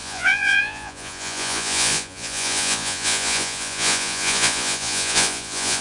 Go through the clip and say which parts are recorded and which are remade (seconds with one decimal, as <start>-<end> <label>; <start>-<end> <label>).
0.0-5.8 remade